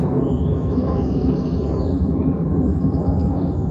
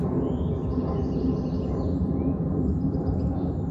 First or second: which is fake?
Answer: first